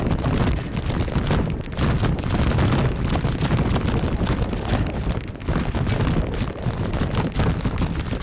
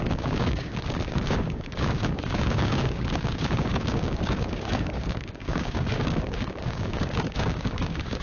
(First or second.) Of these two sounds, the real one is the first